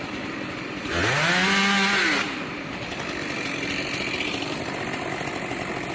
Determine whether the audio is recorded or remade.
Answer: recorded